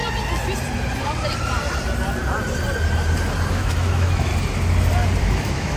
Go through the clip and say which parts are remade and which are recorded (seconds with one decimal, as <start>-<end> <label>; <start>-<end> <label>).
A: 0.0-3.5 recorded; 3.5-4.3 remade; 4.3-5.2 recorded; 5.2-5.8 remade